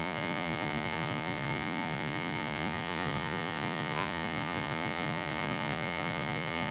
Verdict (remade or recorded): remade